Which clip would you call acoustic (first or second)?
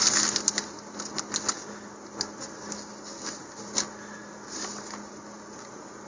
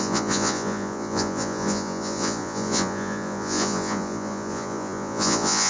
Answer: first